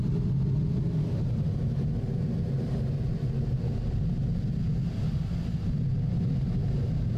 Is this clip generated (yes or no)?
no